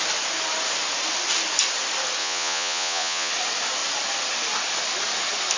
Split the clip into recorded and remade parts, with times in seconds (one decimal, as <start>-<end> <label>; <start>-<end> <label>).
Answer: 0.0-2.2 recorded; 2.2-3.3 remade; 3.3-5.6 recorded